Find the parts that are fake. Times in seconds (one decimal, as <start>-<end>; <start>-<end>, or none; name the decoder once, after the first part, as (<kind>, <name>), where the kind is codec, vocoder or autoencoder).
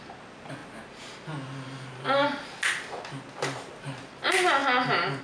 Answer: none